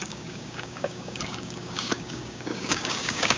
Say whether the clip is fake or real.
fake